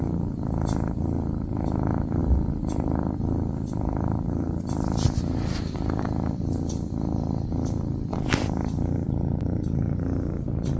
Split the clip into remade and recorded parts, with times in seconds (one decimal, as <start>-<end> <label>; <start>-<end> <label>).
0.0-10.8 recorded